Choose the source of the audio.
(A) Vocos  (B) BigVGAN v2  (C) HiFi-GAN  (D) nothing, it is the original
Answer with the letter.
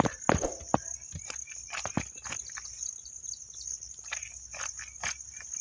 D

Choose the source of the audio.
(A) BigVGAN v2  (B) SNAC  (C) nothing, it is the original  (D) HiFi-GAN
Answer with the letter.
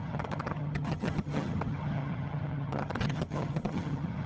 D